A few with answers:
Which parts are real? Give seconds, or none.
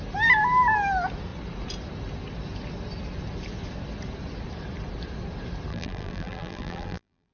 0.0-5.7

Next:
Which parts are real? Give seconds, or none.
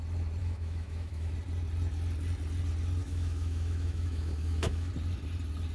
0.0-0.4; 1.3-3.0; 4.9-5.7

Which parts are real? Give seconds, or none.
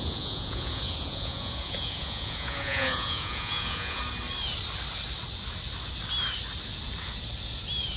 4.0-8.0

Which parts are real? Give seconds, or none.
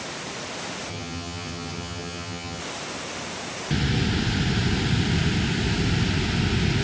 0.0-0.9; 2.6-6.8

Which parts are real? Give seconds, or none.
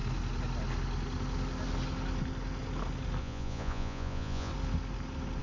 0.0-3.2; 4.5-5.4